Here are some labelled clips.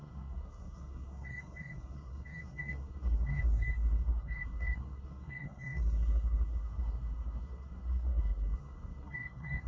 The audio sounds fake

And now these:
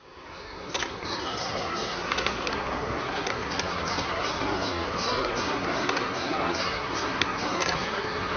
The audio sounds fake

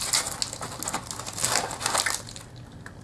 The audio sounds real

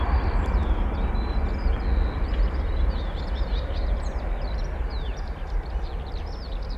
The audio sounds real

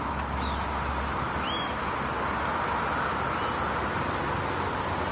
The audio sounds real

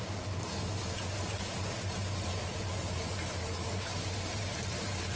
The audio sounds real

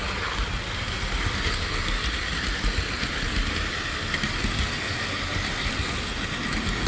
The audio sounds real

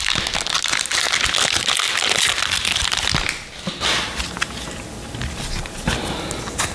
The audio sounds real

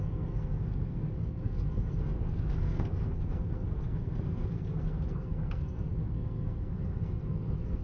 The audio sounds fake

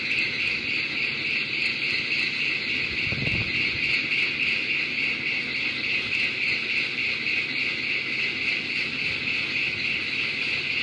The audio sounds real